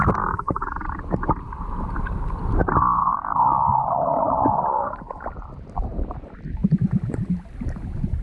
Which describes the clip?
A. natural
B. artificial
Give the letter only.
B